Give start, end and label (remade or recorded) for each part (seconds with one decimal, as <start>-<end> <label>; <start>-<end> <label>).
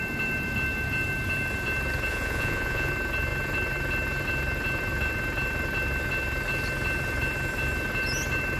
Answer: 0.0-2.1 recorded; 2.1-2.9 remade; 2.9-8.6 recorded